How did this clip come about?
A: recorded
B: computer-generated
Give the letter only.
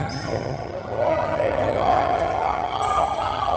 B